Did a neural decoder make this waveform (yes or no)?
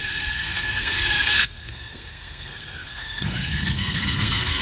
yes